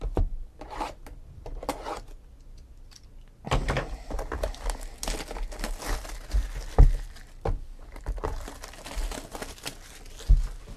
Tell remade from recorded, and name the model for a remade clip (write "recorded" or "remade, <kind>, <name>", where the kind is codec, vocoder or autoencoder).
recorded